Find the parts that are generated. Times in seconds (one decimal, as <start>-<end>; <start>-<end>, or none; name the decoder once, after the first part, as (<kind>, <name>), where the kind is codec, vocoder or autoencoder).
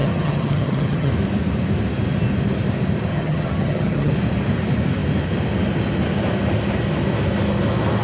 0.0-1.1 (vocoder, HiFi-GAN); 3.1-4.1